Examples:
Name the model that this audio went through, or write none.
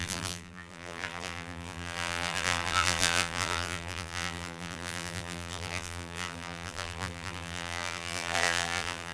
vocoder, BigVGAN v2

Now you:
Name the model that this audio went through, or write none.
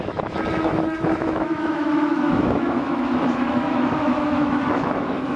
autoencoder, DAC-VAE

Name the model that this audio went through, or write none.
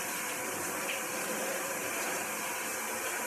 vocoder, BigVGAN v2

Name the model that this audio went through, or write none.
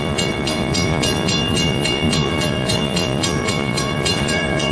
vocoder, Vocos